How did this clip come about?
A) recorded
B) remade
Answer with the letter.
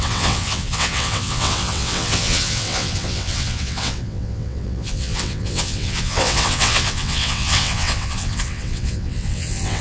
B